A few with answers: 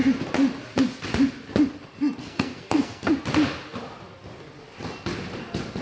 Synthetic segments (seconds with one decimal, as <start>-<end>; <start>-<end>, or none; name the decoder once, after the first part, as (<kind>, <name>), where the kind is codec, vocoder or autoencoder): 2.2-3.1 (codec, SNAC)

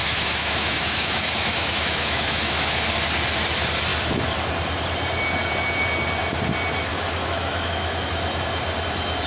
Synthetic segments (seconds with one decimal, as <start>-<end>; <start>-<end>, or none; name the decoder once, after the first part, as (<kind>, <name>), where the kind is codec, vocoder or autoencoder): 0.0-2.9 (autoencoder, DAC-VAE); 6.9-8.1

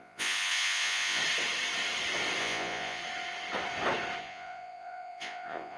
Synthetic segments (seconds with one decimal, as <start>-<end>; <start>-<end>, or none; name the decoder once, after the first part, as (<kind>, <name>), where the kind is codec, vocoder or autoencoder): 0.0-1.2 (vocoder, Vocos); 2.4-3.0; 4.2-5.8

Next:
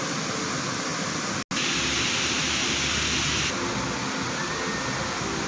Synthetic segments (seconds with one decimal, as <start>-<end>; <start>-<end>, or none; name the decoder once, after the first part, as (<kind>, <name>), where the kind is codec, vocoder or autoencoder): none